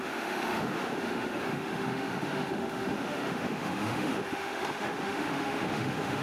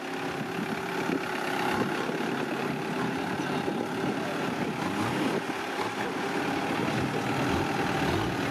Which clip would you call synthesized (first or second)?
first